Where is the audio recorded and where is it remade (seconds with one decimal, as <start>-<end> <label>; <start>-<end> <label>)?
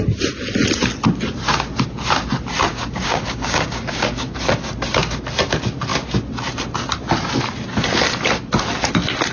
0.0-2.7 recorded; 2.7-4.4 remade; 4.4-9.3 recorded